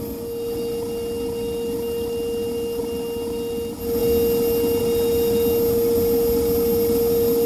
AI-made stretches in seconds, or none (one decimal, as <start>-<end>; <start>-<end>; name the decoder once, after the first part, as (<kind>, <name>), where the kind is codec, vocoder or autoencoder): none